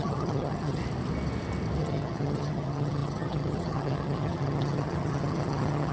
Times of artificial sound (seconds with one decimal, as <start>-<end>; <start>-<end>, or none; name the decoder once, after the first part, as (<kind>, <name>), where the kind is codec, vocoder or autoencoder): 0.0-0.8 (vocoder, HiFi-GAN); 1.8-5.9